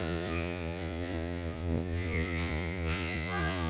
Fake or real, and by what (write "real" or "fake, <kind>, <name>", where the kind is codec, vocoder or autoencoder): fake, vocoder, Vocos